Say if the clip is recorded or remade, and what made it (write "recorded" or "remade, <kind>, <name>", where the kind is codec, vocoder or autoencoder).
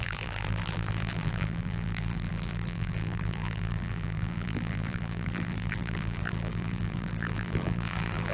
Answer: remade, vocoder, BigVGAN v2